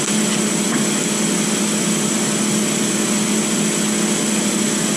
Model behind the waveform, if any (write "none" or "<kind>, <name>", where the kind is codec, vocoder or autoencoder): none